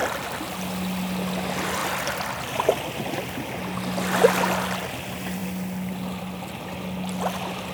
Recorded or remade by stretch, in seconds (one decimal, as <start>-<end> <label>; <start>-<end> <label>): 0.0-7.7 recorded